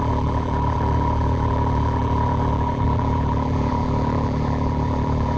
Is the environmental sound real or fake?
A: fake